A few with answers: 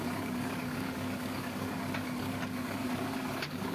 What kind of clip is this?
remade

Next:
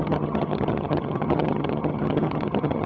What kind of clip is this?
remade